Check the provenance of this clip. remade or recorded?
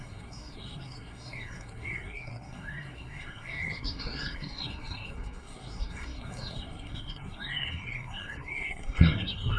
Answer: remade